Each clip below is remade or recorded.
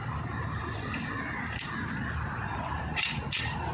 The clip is remade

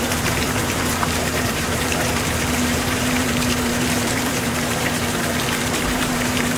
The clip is remade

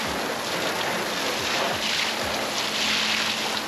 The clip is recorded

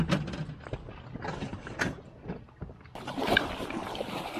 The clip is recorded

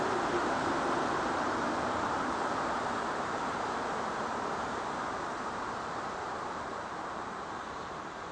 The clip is remade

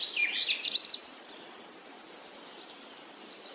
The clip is recorded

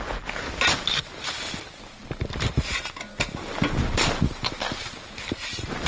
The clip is recorded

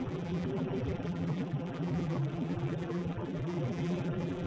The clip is remade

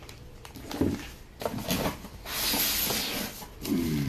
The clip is recorded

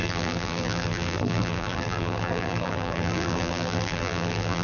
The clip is remade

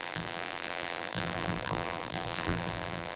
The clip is remade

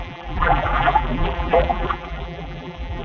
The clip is remade